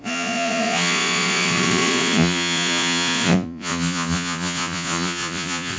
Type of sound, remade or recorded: remade